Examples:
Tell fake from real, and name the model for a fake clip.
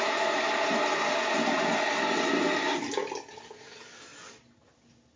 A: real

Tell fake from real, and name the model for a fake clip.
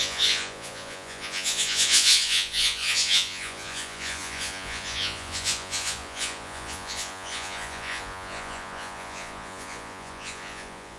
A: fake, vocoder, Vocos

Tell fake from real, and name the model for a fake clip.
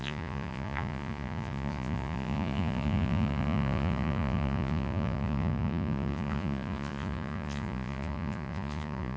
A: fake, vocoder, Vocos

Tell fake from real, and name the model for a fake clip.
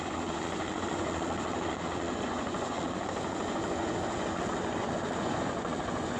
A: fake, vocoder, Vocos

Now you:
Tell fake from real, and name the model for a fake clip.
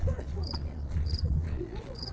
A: fake, vocoder, Vocos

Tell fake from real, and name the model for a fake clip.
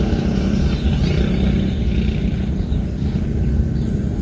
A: real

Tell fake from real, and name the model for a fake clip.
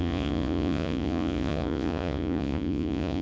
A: fake, vocoder, Vocos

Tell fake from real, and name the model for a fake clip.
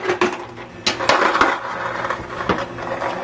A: real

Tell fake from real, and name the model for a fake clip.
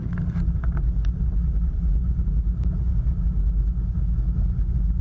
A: real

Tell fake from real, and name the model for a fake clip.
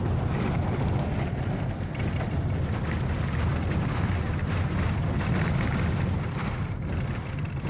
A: real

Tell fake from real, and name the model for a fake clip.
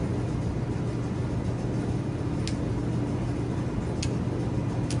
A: real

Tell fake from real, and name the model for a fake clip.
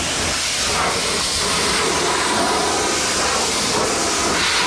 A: real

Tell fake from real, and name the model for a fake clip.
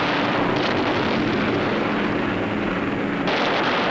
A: real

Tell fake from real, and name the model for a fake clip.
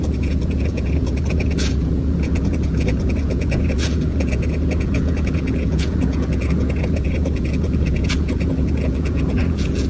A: fake, vocoder, Vocos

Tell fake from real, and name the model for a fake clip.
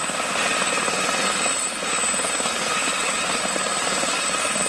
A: real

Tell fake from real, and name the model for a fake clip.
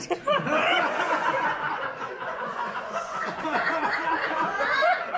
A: fake, vocoder, Vocos